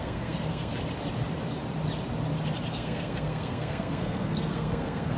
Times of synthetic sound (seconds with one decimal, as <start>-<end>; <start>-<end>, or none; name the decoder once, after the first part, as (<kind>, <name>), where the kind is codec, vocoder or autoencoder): 0.0-0.7 (codec, SNAC); 2.7-5.2